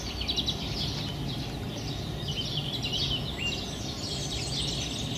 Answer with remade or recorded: recorded